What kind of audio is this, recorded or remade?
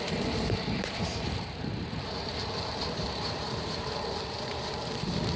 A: remade